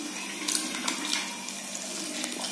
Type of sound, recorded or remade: recorded